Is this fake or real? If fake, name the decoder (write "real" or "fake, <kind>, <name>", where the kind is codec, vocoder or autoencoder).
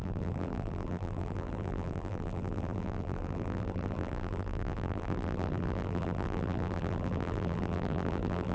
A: fake, vocoder, BigVGAN v2